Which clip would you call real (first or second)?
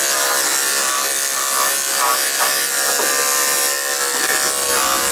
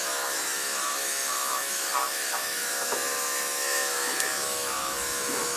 first